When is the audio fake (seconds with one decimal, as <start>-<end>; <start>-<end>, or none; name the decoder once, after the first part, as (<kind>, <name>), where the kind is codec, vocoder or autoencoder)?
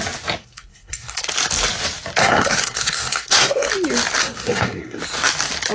0.4-1.2 (codec, SNAC); 2.2-3.7; 4.2-5.0